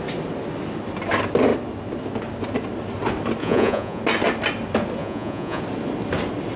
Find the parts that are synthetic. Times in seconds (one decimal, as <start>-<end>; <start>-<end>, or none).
3.4-4.0; 5.0-5.6